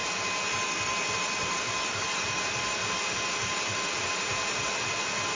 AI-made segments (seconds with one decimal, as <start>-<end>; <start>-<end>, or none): none